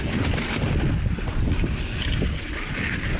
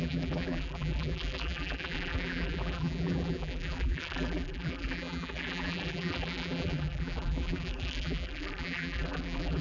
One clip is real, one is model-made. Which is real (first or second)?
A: first